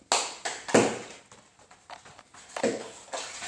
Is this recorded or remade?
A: recorded